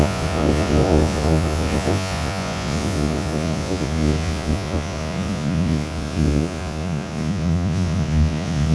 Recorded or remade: remade